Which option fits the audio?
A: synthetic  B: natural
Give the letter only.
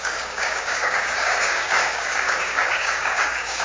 A